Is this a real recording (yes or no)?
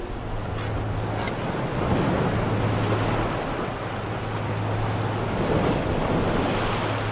yes